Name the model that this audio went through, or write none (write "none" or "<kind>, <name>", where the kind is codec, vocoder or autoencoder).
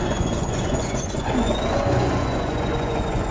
vocoder, Vocos